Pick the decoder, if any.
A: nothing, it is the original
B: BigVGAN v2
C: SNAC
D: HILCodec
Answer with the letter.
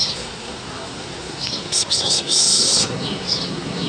C